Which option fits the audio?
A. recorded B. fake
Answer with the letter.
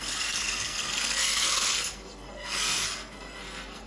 B